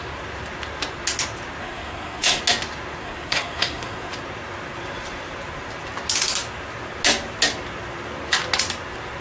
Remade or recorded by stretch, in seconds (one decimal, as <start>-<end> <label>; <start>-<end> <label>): 0.0-1.6 recorded; 1.6-2.4 remade; 2.4-3.0 recorded; 3.0-4.1 remade; 4.1-9.2 recorded